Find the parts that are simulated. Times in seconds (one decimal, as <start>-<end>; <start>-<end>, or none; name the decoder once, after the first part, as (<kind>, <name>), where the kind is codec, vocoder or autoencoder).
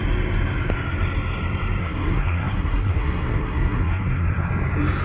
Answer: 1.8-4.5 (codec, SNAC)